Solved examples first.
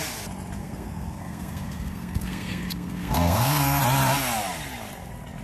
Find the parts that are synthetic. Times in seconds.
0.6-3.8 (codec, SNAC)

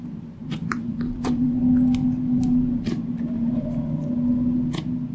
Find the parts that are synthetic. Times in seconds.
0.6-1.6 (vocoder, BigVGAN v2); 2.3-3.6

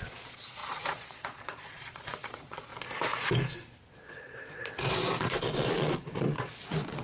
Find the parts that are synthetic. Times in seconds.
0.0-2.7 (vocoder, Vocos); 3.9-4.6; 5.2-7.0

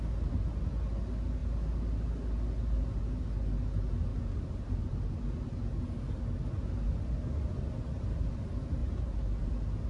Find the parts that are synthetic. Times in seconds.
4.1-5.0 (vocoder, BigVGAN v2); 7.5-8.3; 8.8-9.5